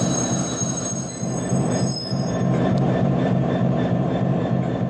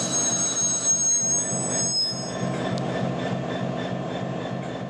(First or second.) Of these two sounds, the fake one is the first